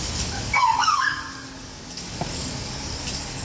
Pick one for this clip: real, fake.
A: fake